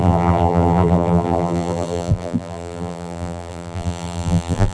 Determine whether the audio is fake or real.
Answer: fake